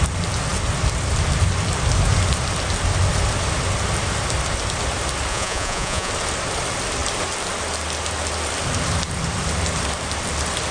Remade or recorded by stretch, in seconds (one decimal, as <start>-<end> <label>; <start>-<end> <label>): 0.0-5.3 recorded; 5.3-6.1 remade; 6.1-10.7 recorded